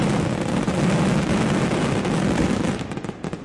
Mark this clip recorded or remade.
recorded